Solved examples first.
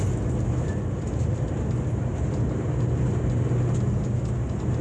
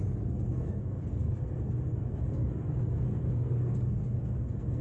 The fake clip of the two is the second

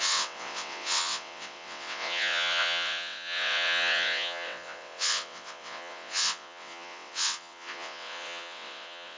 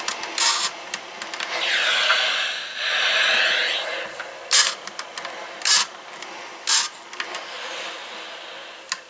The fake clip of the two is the first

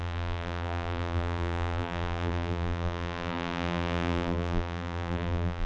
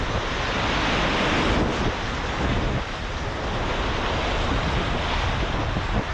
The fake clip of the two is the first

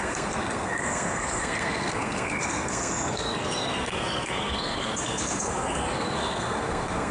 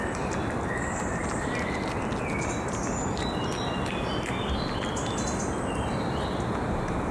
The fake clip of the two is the first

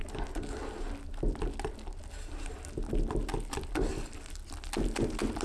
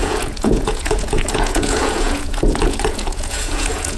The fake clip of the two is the second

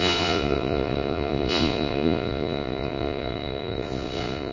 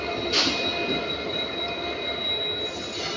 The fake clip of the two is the first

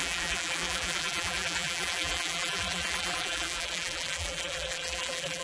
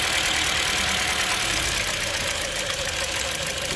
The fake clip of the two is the first